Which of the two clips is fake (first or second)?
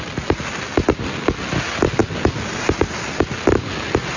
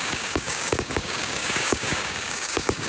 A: second